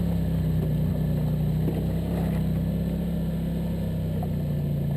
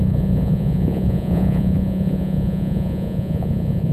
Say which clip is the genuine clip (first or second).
first